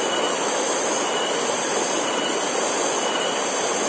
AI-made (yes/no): no